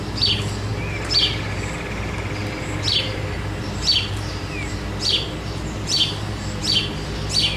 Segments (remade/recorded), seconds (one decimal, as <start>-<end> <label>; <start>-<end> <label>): 0.0-7.6 recorded